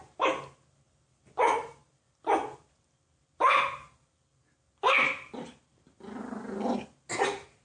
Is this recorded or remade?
recorded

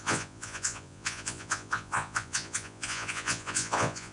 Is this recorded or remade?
remade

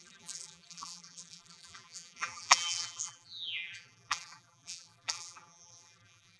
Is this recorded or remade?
remade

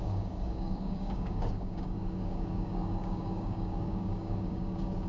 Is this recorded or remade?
remade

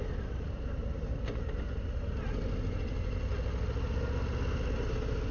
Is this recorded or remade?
recorded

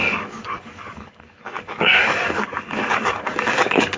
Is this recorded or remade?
remade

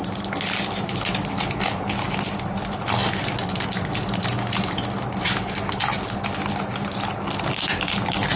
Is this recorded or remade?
recorded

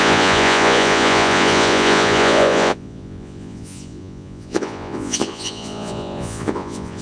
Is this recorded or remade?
remade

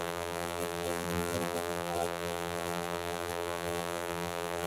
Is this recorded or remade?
remade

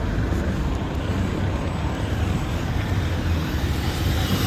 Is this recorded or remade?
recorded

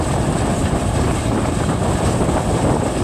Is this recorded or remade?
recorded